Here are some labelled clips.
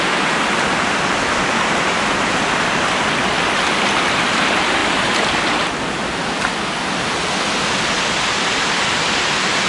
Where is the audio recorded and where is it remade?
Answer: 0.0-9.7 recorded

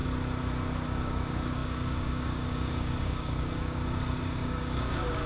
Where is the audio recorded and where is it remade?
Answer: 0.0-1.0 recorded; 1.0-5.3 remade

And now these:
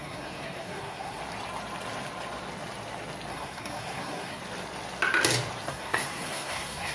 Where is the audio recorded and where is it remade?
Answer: 0.0-1.2 remade; 1.2-3.3 recorded; 3.3-4.4 remade; 4.4-5.7 recorded; 5.7-6.9 remade